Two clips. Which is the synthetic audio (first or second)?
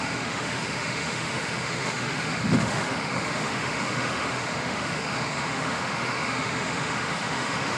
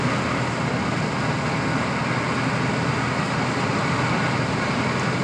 first